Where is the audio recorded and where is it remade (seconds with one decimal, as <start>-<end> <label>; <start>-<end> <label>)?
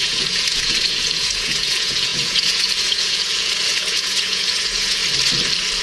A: 0.0-5.0 remade; 5.0-5.8 recorded